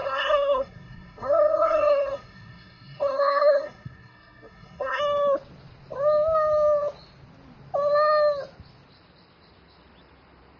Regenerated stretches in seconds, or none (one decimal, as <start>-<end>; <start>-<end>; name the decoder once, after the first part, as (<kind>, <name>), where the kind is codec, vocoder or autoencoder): 0.0-5.0 (codec, SNAC)